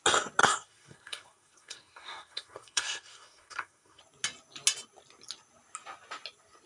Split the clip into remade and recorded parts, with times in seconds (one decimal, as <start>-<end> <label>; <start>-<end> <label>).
0.0-0.4 recorded; 0.4-4.0 remade; 4.0-6.7 recorded